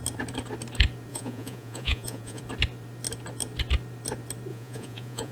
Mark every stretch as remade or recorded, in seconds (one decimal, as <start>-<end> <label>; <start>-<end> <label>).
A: 0.0-1.1 recorded; 1.1-2.4 remade; 2.4-4.5 recorded; 4.5-5.3 remade